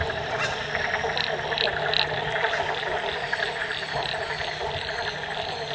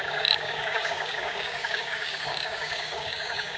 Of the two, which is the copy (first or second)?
second